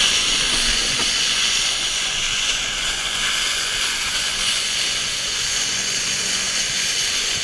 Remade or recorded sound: remade